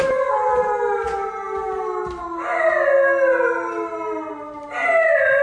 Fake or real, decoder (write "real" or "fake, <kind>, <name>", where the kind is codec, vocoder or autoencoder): real